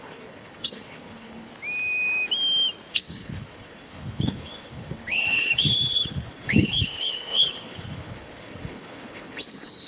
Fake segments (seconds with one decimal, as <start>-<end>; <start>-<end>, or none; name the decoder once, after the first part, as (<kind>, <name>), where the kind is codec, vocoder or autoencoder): 0.0-1.5 (codec, HILCodec); 2.9-9.9